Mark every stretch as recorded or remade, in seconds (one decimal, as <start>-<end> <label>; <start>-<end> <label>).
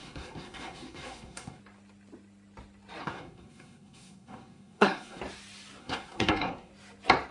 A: 0.0-1.6 remade; 1.6-3.0 recorded; 3.0-5.2 remade; 5.2-5.8 recorded; 5.8-6.7 remade; 6.7-7.3 recorded